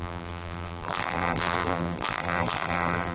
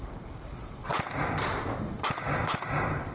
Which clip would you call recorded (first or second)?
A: second